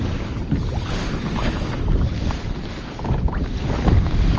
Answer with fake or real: real